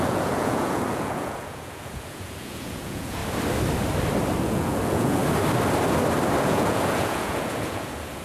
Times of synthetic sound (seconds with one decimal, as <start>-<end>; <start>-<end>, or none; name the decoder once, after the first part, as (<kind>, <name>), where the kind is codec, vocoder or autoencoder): 0.0-3.2 (vocoder, Vocos); 4.4-5.2; 6.5-8.2